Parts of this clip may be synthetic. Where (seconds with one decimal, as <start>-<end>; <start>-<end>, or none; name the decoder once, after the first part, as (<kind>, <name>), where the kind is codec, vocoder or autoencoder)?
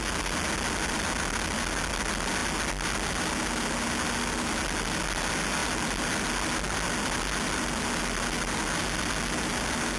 none